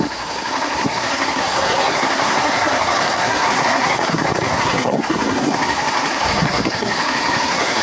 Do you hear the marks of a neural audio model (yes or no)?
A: yes